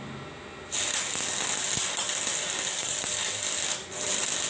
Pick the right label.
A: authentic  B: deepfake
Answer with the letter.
A